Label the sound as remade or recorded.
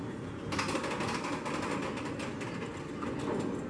recorded